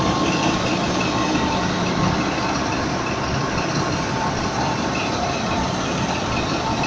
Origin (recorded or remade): recorded